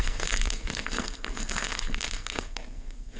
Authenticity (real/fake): fake